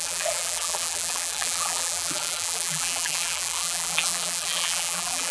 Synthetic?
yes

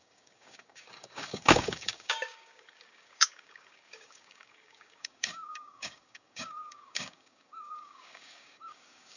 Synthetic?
yes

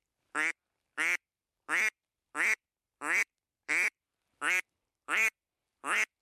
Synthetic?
yes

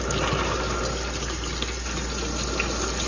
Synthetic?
no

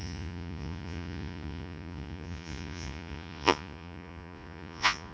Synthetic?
yes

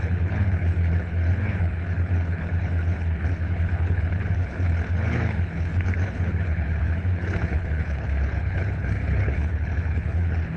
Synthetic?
yes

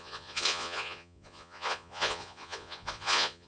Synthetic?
yes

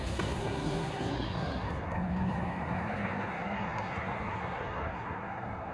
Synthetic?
yes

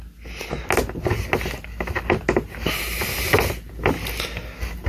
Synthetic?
no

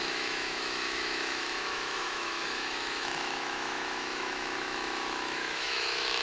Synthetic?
yes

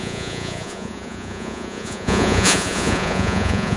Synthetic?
yes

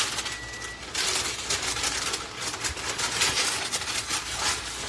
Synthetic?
no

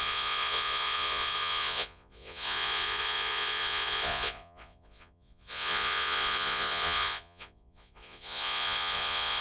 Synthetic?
yes